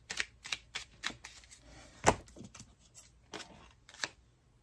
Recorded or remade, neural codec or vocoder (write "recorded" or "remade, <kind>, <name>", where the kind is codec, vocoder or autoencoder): recorded